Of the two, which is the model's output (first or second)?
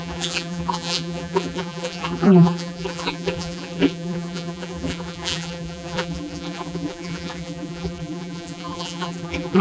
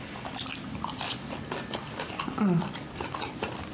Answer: first